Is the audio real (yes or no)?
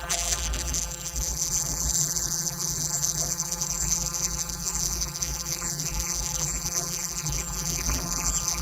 no